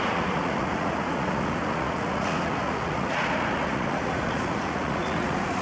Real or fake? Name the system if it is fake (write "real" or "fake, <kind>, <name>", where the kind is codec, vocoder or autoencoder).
fake, vocoder, Vocos